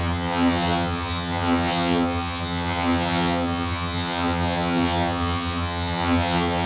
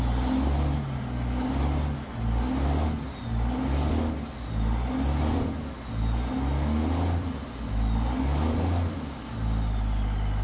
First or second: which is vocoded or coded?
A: first